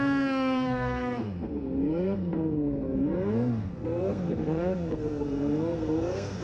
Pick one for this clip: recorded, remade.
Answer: remade